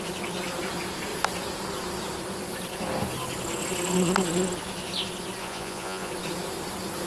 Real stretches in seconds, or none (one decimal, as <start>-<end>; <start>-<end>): 0.0-5.4; 6.1-7.1